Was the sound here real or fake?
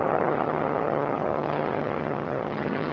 fake